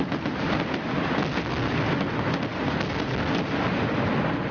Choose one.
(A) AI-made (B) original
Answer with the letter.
B